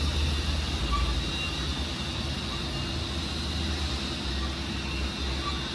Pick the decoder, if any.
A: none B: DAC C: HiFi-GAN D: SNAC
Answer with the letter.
A